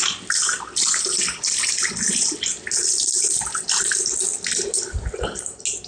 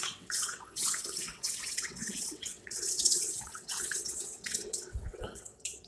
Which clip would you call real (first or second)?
first